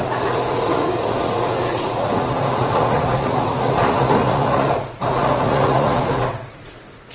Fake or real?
fake